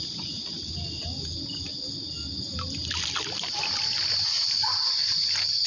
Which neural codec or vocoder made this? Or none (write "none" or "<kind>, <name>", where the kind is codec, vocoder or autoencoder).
none